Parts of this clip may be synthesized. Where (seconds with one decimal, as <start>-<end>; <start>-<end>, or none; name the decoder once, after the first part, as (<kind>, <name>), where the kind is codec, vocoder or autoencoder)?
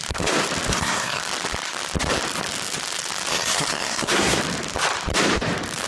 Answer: 0.7-1.2 (codec, SNAC); 3.3-4.4